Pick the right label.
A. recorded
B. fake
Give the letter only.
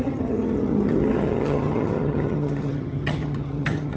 B